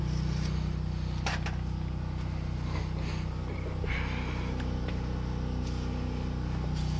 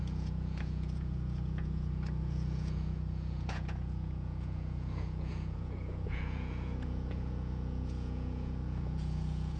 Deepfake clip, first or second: second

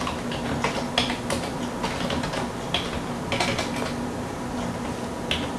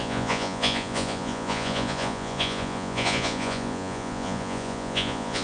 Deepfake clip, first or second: second